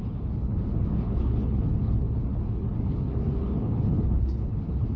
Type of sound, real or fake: fake